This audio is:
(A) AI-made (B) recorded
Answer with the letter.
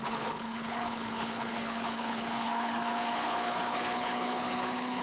A